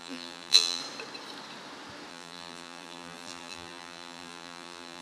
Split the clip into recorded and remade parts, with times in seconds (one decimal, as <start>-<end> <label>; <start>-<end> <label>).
0.0-0.8 remade; 0.8-2.1 recorded; 2.1-5.0 remade